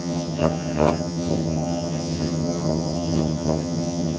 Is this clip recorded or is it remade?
remade